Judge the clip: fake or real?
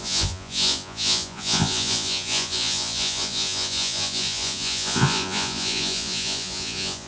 fake